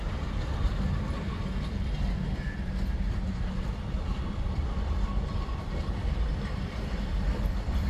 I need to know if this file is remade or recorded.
remade